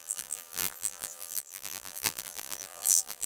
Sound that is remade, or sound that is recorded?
remade